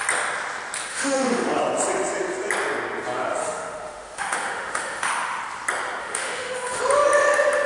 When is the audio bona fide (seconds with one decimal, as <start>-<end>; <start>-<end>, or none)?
0.0-0.9; 1.6-3.4; 5.4-6.0; 6.8-7.7